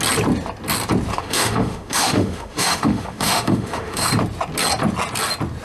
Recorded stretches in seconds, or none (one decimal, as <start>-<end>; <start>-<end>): 0.0-1.1; 4.1-5.6